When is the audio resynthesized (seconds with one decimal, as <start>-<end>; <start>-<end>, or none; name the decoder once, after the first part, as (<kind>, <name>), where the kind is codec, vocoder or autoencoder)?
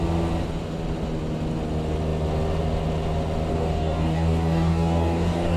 3.5-5.6 (codec, DAC)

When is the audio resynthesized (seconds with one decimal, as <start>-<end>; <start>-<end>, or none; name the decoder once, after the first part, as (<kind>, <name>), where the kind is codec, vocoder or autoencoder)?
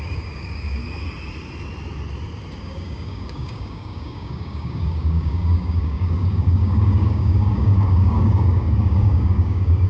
0.0-0.8 (codec, DAC); 2.6-9.9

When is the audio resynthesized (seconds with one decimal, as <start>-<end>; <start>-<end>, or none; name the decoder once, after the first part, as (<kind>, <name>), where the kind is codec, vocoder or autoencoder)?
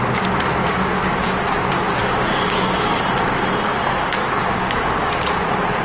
0.6-3.0 (codec, DAC); 4.2-5.2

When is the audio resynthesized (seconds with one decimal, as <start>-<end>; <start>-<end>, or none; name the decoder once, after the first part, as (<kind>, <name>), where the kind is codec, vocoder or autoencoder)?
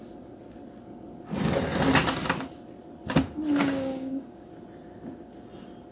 3.6-4.5 (codec, DAC)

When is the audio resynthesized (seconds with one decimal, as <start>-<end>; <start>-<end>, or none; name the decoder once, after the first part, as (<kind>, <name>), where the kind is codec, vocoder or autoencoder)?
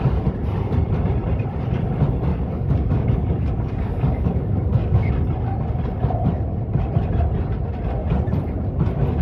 2.3-5.1 (codec, DAC)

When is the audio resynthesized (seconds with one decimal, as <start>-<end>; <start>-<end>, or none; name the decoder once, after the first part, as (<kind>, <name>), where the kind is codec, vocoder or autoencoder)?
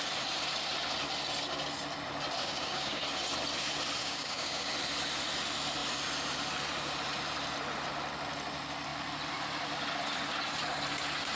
2.4-3.0 (codec, DAC); 4.0-4.7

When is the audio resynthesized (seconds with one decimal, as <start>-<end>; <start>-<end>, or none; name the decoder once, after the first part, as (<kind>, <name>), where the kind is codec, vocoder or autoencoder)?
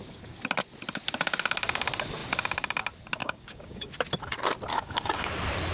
3.2-3.9 (codec, DAC); 4.7-5.3